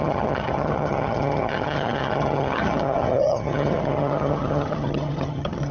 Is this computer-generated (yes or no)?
yes